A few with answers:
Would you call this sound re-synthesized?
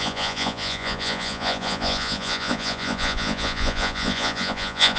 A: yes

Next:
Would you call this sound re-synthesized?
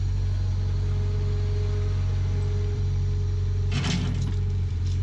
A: yes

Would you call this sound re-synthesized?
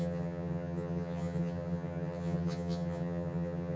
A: yes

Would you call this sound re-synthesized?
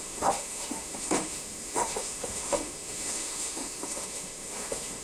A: yes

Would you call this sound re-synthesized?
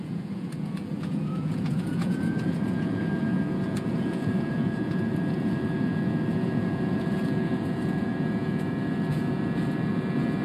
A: yes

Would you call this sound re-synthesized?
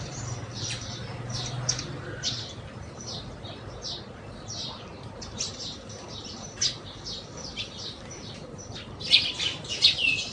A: no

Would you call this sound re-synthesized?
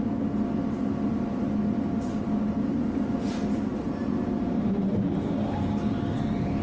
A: no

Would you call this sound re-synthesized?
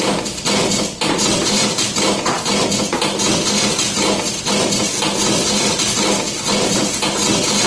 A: no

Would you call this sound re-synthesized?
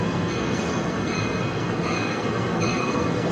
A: yes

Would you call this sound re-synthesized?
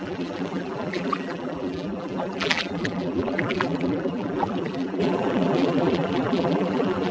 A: yes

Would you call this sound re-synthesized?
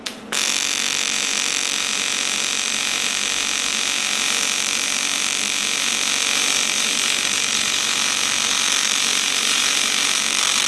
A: no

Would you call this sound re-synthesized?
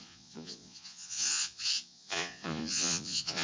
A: yes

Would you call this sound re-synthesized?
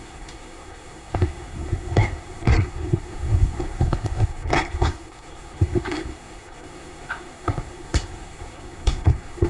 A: yes